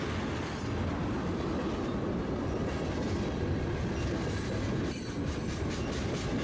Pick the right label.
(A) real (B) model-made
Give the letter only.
A